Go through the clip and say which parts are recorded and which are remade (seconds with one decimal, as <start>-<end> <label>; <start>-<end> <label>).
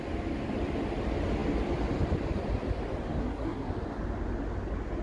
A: 0.0-3.2 recorded; 3.2-3.7 remade; 3.7-5.0 recorded